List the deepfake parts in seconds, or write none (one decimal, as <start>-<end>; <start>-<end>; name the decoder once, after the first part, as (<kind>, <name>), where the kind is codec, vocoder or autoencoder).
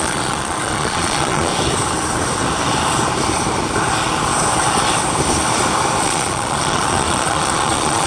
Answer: 0.0-1.5 (vocoder, Vocos); 6.0-8.1